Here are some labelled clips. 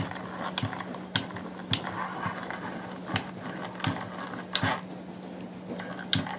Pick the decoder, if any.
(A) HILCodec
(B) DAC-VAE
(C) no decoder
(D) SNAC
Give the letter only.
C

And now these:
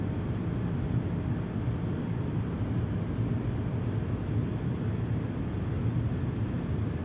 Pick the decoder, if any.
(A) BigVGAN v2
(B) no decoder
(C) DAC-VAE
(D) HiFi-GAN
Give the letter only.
B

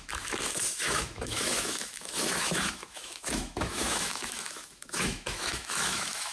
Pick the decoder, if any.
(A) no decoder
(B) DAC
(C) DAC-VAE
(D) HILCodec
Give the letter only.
C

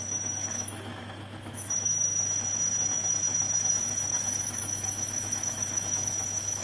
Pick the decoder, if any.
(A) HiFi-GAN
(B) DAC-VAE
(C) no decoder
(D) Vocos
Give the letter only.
B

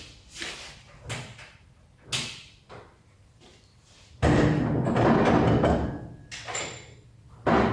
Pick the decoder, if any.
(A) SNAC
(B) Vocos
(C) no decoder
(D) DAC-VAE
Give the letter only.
C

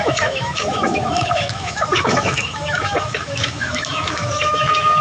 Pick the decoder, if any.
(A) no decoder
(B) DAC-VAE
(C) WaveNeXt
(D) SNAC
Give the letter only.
B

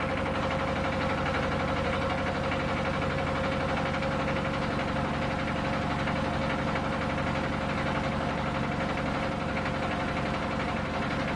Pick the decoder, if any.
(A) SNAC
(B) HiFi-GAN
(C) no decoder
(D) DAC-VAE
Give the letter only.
C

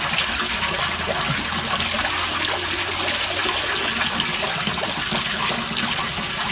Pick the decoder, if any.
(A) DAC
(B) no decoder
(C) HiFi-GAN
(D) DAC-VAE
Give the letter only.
B